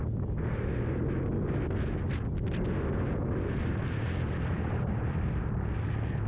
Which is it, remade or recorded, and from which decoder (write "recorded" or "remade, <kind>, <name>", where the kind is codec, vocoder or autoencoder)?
recorded